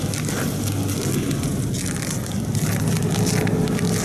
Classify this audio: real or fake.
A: real